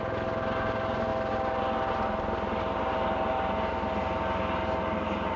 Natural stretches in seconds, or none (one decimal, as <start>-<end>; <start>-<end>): 0.0-5.4